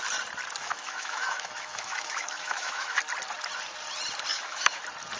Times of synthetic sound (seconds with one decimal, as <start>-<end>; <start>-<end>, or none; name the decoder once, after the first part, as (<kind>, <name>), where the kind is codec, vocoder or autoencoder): 0.6-3.0 (autoencoder, DAC-VAE); 4.3-4.8